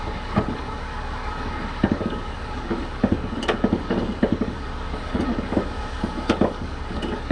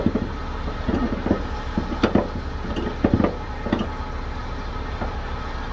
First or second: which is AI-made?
first